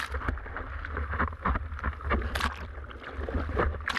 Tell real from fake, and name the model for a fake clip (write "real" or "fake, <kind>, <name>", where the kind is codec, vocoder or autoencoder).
real